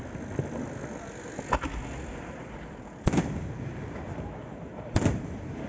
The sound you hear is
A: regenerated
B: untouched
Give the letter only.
B